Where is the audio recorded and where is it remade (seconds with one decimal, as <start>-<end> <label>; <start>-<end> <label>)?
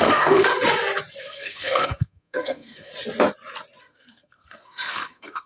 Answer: 0.0-0.5 remade; 0.5-1.2 recorded; 1.2-2.9 remade; 2.9-3.8 recorded; 3.8-5.5 remade